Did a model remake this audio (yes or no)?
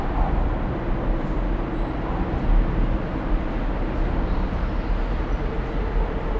no